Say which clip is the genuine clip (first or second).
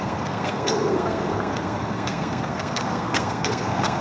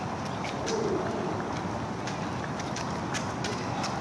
second